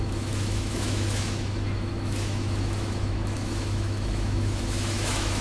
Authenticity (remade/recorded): remade